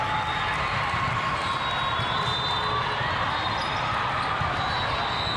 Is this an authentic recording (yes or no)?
yes